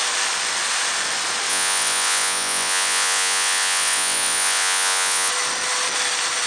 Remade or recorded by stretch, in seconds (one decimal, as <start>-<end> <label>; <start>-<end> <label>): 0.0-1.5 recorded; 1.5-5.3 remade; 5.3-6.5 recorded